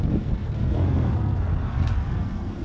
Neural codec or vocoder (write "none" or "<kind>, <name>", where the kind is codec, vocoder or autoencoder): codec, SNAC